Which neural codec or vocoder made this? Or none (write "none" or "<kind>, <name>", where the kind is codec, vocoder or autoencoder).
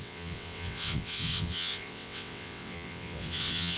vocoder, WaveNeXt